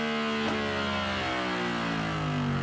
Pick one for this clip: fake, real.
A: real